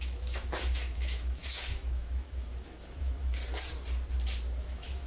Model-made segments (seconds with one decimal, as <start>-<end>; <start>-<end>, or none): 0.0-3.4; 4.6-5.1